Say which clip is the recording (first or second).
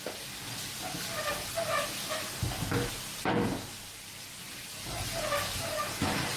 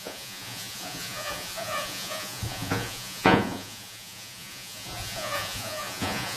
first